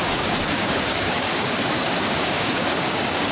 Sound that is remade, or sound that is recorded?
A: remade